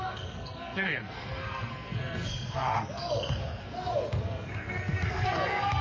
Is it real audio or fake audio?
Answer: fake